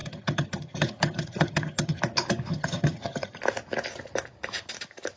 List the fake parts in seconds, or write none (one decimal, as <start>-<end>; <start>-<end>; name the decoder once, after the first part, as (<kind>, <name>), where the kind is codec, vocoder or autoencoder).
0.0-2.0 (vocoder, HiFi-GAN); 2.5-3.4